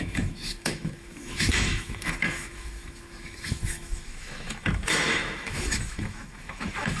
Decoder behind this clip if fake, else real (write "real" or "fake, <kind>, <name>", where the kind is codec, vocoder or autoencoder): fake, autoencoder, DAC-VAE